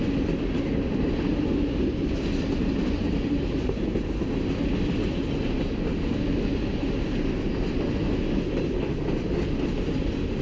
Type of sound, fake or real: real